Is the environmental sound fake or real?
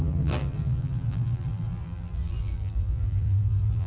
fake